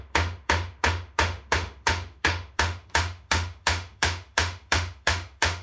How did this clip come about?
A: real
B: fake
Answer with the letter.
B